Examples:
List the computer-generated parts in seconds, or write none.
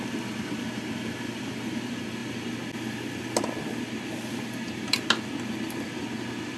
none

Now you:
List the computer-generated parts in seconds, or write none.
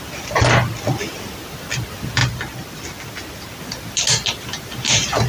none